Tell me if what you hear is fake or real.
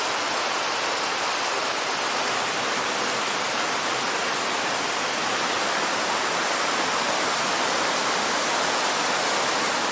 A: real